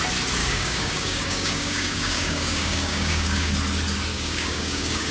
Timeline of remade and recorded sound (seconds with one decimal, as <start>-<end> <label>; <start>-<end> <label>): 0.0-0.4 recorded; 0.4-3.5 remade; 3.5-4.1 recorded; 4.1-5.1 remade